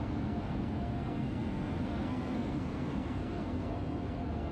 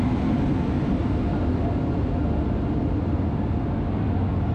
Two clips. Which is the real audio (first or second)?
second